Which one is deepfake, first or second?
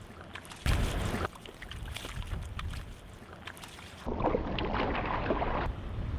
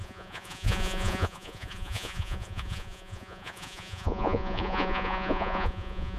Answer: second